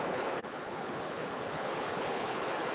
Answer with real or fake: fake